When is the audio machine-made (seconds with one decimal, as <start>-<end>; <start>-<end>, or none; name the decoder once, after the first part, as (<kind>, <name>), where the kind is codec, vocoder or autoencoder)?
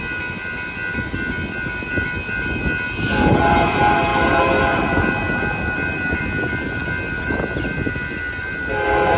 none